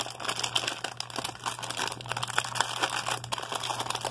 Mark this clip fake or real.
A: real